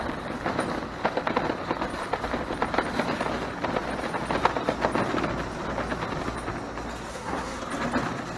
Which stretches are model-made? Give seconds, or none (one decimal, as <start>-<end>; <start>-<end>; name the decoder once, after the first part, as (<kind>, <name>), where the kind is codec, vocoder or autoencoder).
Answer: 7.1-7.6 (codec, SNAC)